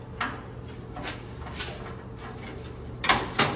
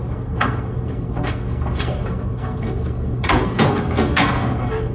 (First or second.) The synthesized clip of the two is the second